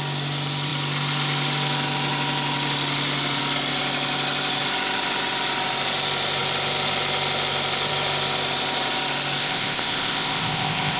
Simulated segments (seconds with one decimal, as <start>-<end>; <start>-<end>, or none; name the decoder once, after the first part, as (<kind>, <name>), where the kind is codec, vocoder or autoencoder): 9.4-11.0 (codec, ZipCodec)

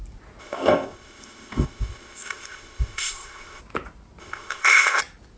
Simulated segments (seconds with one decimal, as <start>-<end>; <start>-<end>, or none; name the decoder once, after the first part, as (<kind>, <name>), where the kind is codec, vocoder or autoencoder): 0.4-3.6 (codec, ZipCodec); 4.2-5.0

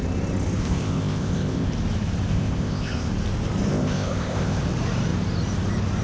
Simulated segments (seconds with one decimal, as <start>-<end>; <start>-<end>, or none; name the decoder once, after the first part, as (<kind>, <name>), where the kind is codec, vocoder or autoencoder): 0.6-1.7 (codec, ZipCodec); 2.3-3.1; 3.7-4.6

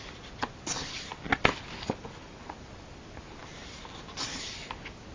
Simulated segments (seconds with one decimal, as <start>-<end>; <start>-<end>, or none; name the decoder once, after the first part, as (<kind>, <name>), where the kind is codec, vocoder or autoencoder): none